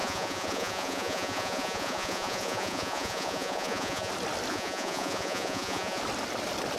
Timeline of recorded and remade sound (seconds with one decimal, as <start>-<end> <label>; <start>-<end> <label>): 0.0-4.1 remade; 4.1-4.5 recorded; 4.5-6.0 remade; 6.0-6.8 recorded

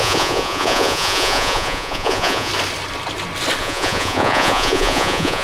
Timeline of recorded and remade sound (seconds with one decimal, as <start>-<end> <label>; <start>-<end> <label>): 0.0-2.5 remade; 2.5-3.6 recorded; 3.6-5.4 remade

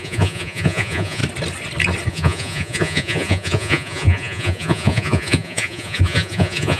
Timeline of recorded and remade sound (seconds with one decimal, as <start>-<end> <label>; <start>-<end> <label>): 0.0-1.2 remade; 1.2-2.1 recorded; 2.1-6.8 remade